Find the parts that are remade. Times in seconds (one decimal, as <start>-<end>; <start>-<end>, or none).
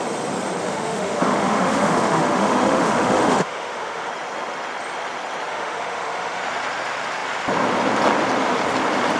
0.6-4.1; 5.5-6.4